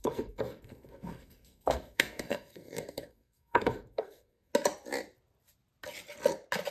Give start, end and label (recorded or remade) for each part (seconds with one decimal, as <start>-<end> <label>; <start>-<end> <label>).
0.0-4.5 remade; 4.5-6.7 recorded